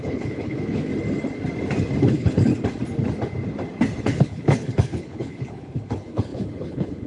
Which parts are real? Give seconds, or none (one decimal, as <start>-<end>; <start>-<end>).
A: 0.9-2.1; 2.5-4.0